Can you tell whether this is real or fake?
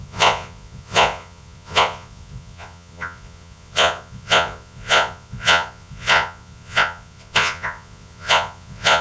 fake